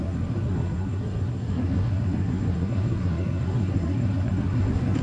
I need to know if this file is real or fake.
fake